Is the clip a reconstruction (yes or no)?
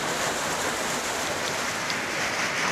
no